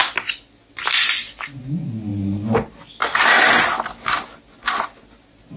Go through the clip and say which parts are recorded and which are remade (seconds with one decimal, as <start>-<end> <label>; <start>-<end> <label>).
0.0-5.6 recorded